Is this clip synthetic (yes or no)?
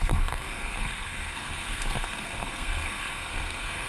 yes